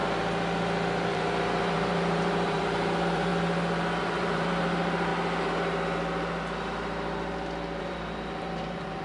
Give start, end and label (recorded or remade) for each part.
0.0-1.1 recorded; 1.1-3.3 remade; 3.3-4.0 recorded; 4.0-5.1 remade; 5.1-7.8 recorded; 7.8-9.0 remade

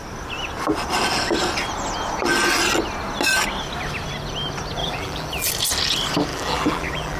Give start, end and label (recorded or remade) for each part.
0.0-4.8 recorded; 4.8-5.5 remade; 5.5-6.3 recorded; 6.3-7.2 remade

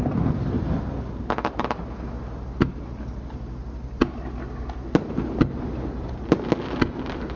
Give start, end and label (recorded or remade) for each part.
0.0-7.4 recorded

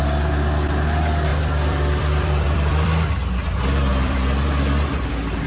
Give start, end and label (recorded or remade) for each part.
0.0-1.3 recorded; 1.3-3.1 remade; 3.1-3.9 recorded; 3.9-5.1 remade; 5.1-5.5 recorded

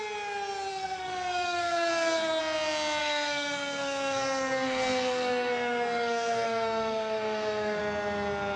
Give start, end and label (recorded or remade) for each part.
0.0-0.7 recorded; 0.7-2.4 remade; 2.4-3.0 recorded; 3.0-7.8 remade; 7.8-8.6 recorded

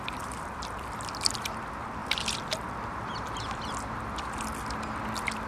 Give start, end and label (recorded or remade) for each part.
0.0-5.5 recorded